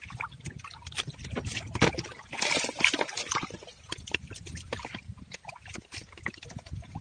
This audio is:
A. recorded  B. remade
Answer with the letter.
A